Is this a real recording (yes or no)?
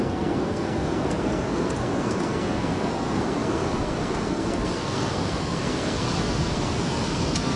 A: no